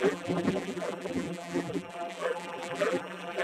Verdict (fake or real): fake